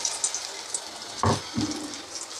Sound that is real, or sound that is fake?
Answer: real